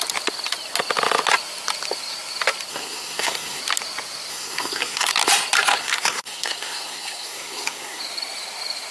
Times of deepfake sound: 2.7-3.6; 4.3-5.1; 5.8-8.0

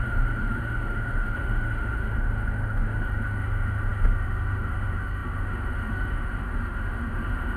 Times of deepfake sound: 0.0-7.6

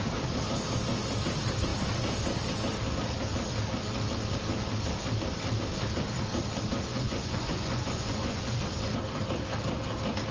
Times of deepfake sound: 6.9-8.6

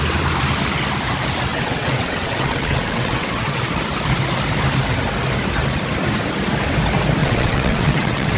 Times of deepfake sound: 1.5-3.6; 7.2-8.4

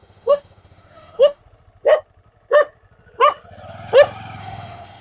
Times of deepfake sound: 0.0-1.4; 4.4-5.0